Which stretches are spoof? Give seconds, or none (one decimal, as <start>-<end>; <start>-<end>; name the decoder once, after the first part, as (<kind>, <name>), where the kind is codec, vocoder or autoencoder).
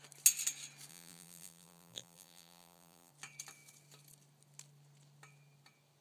0.9-3.1 (vocoder, BigVGAN v2)